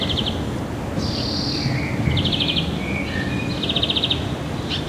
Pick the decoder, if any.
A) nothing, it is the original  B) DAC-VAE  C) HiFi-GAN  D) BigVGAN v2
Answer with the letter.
A